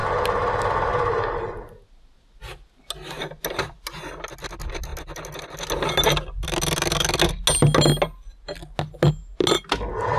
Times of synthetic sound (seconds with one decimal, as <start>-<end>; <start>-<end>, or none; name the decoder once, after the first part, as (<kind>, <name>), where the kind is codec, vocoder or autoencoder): none